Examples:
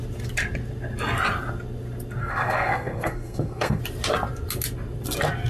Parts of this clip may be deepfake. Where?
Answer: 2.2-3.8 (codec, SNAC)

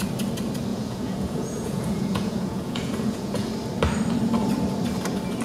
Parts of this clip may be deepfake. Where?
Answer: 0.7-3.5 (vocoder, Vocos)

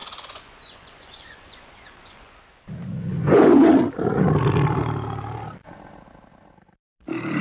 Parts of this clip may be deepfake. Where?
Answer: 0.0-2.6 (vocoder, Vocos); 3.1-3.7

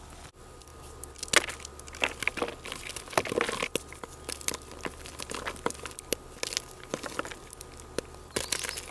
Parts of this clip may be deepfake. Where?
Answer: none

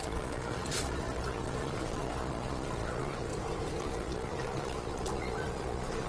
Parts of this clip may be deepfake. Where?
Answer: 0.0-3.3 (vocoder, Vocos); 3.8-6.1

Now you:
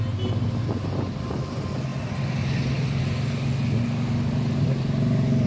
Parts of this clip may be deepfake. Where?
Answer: none